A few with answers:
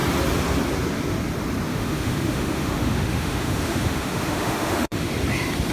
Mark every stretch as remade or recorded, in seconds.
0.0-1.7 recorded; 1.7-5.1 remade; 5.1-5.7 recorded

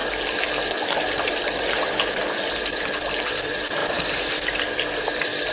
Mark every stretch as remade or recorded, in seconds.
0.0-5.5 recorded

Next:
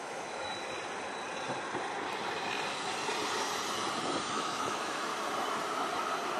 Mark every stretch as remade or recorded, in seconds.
0.0-0.5 remade; 0.5-4.3 recorded; 4.3-5.1 remade; 5.1-6.4 recorded

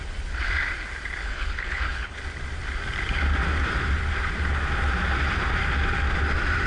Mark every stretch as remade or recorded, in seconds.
0.0-1.2 recorded; 1.2-2.2 remade; 2.2-6.7 recorded

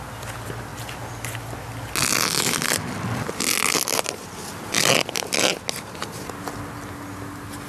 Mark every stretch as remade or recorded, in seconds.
0.0-7.7 recorded

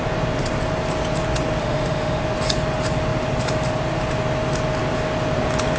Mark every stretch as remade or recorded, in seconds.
0.0-1.6 recorded; 1.6-2.2 remade; 2.2-5.8 recorded